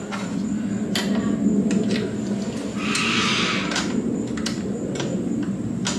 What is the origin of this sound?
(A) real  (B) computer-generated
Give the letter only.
A